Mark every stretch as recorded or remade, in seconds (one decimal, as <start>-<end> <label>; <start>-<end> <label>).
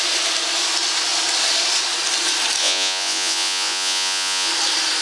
0.0-2.6 recorded; 2.6-4.5 remade; 4.5-5.0 recorded